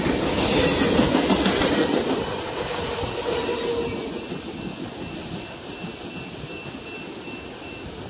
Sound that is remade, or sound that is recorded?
recorded